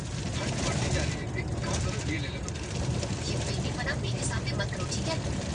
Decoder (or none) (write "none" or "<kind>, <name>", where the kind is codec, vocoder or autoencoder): none